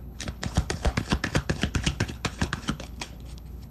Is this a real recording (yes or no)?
no